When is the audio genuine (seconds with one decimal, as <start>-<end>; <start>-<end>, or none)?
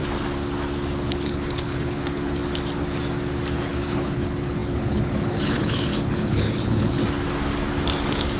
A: 0.0-1.0; 2.4-3.5; 7.0-8.4